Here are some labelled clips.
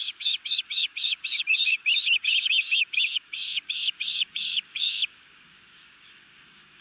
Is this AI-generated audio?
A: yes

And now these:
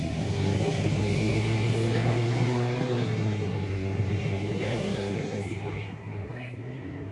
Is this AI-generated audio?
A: yes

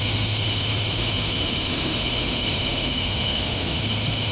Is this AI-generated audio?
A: yes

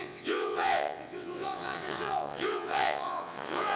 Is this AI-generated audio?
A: yes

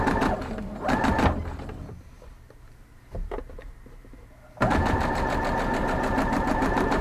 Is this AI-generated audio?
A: yes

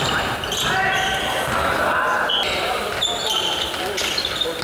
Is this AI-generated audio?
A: no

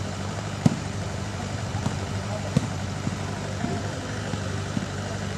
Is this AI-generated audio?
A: yes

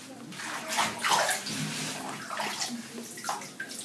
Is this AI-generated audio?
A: no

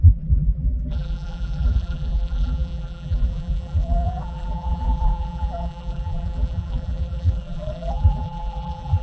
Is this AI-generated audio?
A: yes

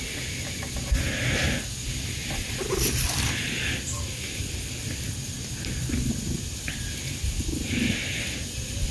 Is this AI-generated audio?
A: no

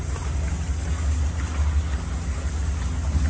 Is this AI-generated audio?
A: no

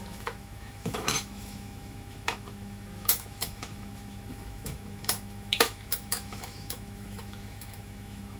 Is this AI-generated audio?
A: yes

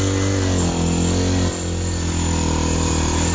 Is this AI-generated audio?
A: no